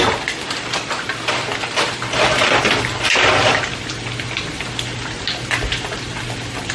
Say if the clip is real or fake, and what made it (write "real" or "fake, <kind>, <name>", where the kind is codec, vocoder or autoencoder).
real